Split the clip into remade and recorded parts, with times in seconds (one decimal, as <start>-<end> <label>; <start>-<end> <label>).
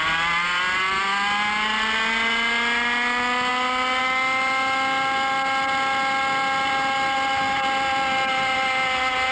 0.0-9.3 recorded